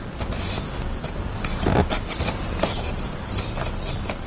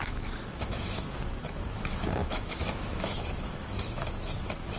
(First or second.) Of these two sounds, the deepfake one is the second